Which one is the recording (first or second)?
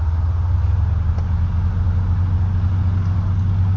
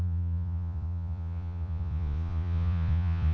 first